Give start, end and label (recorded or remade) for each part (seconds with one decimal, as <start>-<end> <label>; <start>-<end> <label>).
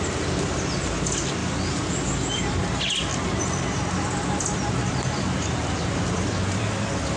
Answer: 0.0-4.8 recorded; 4.8-6.6 remade; 6.6-7.2 recorded